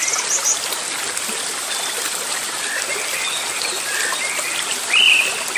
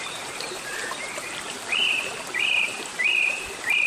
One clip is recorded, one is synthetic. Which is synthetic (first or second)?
second